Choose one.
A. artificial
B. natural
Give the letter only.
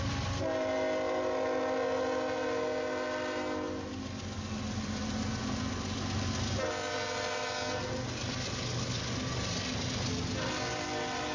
B